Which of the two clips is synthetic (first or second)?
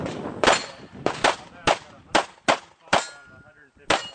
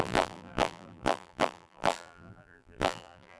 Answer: second